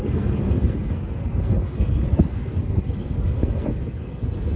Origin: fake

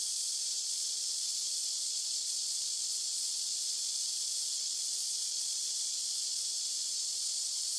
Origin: fake